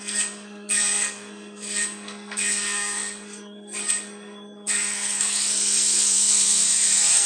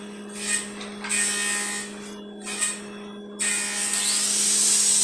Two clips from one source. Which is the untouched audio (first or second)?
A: second